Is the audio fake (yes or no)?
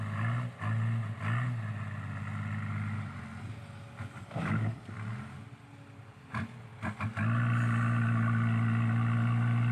no